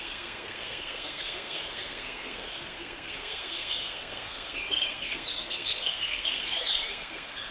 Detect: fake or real fake